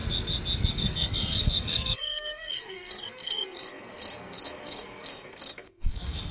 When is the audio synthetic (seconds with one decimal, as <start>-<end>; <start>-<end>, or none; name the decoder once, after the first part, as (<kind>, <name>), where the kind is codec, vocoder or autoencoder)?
0.7-6.3 (codec, SNAC)